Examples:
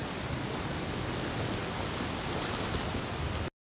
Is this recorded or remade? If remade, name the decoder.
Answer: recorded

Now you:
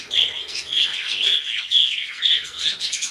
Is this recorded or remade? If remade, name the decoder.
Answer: remade, codec, SNAC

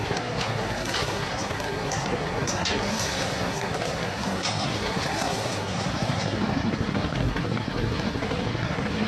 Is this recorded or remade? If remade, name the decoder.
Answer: remade, codec, SNAC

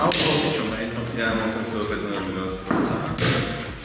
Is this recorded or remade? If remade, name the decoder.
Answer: recorded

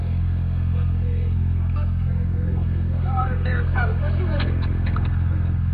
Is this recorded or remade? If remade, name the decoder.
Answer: remade, codec, SNAC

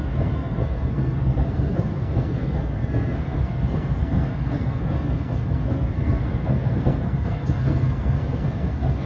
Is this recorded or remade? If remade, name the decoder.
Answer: remade, codec, SNAC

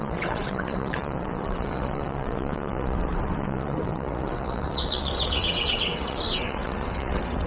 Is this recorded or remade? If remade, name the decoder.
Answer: remade, vocoder, WaveNeXt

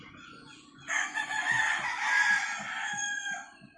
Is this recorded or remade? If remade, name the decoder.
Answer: remade, vocoder, Vocos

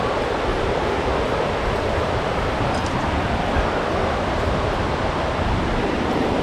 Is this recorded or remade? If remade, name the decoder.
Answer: remade, vocoder, BigVGAN v2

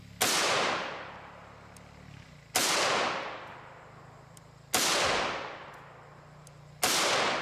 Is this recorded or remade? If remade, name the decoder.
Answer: recorded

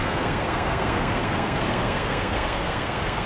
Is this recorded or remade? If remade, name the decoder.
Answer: remade, codec, SNAC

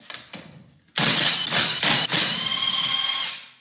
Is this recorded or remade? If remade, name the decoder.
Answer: recorded